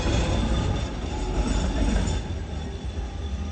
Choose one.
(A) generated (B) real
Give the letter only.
B